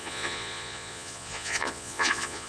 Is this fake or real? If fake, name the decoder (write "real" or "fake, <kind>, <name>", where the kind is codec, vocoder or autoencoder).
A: fake, vocoder, Vocos